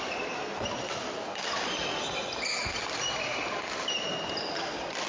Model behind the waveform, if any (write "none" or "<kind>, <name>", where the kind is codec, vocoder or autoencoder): none